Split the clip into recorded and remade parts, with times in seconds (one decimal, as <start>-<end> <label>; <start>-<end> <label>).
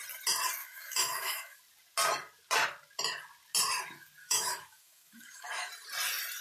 0.0-0.6 recorded; 0.6-1.6 remade; 1.6-4.2 recorded; 4.2-5.7 remade; 5.7-6.4 recorded